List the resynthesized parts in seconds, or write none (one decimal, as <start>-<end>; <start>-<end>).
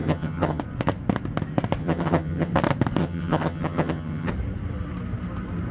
0.0-0.6; 1.8-2.5; 3.0-4.3